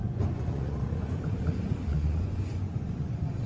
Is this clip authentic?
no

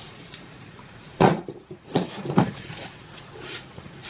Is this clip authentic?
no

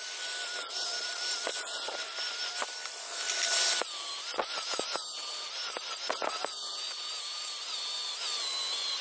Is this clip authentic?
yes